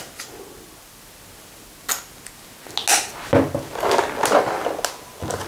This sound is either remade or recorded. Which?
recorded